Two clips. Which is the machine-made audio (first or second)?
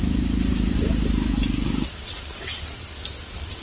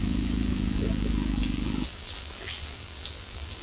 second